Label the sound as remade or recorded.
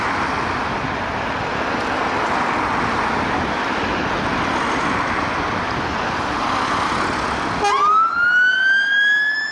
recorded